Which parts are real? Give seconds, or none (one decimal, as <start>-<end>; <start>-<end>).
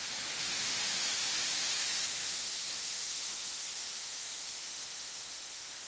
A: none